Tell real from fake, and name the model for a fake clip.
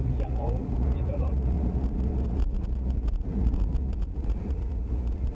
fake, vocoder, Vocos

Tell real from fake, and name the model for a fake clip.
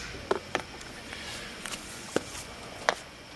fake, vocoder, Vocos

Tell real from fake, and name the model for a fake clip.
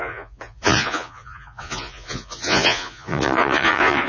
fake, vocoder, Vocos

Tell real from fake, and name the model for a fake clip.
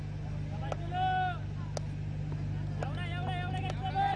real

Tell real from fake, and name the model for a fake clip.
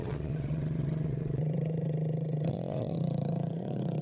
fake, vocoder, Vocos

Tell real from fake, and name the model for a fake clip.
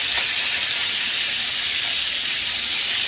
real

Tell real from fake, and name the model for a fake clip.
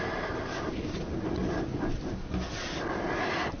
real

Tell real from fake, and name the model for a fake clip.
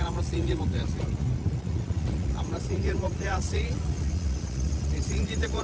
fake, vocoder, Vocos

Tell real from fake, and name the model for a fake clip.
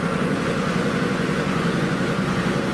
fake, vocoder, Vocos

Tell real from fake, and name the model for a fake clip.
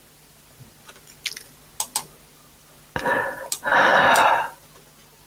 real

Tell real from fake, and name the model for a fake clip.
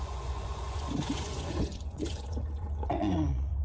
fake, vocoder, Vocos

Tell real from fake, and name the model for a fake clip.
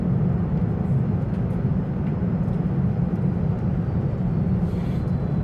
real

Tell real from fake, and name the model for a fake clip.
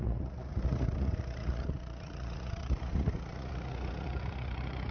fake, vocoder, Vocos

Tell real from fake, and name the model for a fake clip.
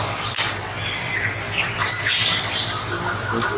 real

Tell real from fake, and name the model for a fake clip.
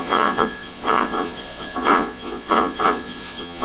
fake, vocoder, Vocos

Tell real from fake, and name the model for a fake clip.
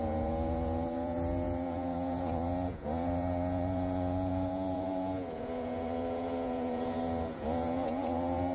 fake, vocoder, Vocos